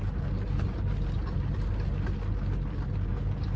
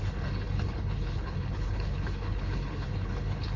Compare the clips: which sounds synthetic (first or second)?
second